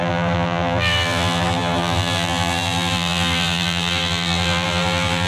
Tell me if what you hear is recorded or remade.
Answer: remade